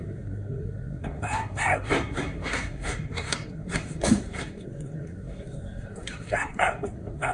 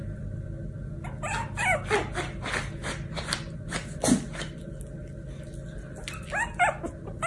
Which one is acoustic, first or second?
second